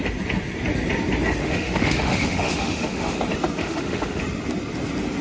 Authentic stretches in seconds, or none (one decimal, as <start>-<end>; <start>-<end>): 0.0-1.4; 3.2-3.6; 4.2-5.2